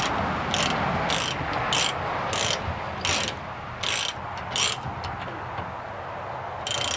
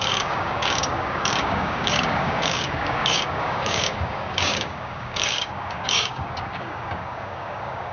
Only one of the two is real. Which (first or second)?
first